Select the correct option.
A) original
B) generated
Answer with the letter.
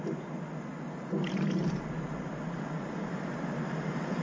A